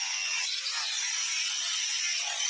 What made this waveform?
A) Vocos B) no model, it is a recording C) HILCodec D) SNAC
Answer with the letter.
B